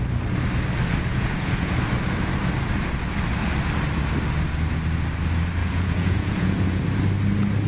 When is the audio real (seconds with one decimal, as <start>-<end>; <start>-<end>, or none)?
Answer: 0.0-1.1; 1.8-5.6; 6.8-7.7